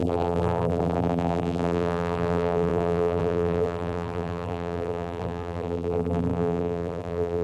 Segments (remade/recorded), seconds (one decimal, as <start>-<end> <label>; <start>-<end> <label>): 0.0-7.4 remade